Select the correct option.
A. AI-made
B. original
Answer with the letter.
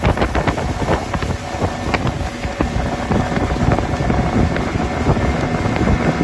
B